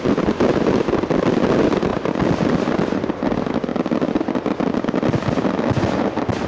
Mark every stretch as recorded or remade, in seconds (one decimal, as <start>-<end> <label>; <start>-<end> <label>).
0.0-6.5 recorded